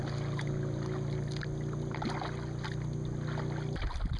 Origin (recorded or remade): recorded